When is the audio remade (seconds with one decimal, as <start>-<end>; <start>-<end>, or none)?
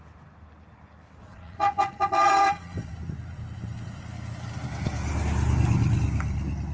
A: 1.2-2.9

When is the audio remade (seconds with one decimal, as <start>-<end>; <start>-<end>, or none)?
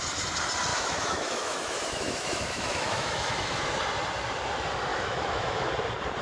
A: 0.7-3.8; 4.9-5.7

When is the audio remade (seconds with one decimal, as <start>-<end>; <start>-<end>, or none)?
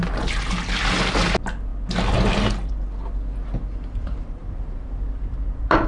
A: 4.4-5.9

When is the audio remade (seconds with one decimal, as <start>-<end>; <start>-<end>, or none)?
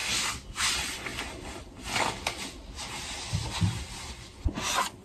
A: 0.7-1.1; 4.1-5.0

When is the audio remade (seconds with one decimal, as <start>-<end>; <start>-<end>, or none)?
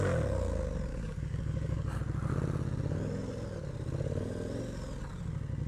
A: 0.9-2.0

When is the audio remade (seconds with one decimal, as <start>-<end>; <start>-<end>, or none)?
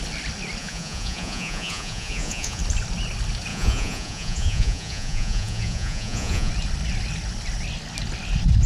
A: 0.6-2.6; 3.5-6.5